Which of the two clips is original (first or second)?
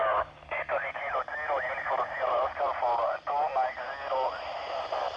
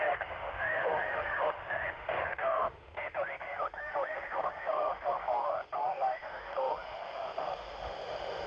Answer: first